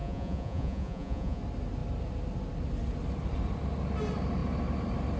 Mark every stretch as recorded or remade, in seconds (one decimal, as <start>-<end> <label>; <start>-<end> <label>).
0.0-1.4 remade; 1.4-5.2 recorded